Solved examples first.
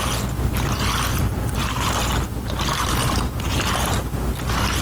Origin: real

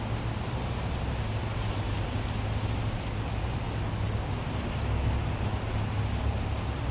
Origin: real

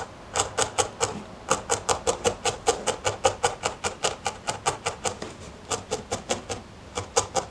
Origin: real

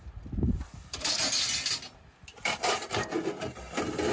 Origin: real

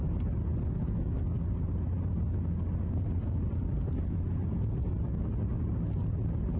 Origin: real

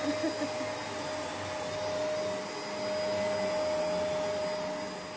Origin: real